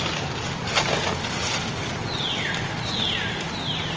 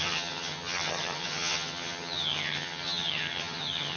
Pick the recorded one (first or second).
first